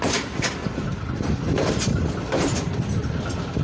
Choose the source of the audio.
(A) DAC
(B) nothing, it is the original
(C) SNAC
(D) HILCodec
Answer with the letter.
B